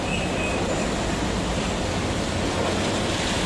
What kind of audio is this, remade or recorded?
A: recorded